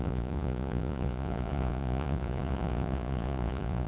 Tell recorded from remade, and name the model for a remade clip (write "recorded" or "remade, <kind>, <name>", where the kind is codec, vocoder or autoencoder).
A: remade, vocoder, Vocos